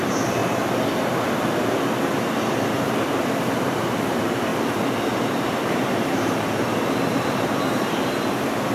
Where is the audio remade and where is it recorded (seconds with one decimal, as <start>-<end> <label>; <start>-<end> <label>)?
0.0-0.4 remade; 0.4-2.0 recorded; 2.0-4.5 remade; 4.5-5.1 recorded; 5.1-8.7 remade